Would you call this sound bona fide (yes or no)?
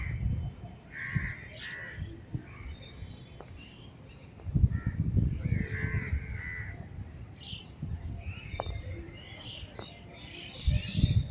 yes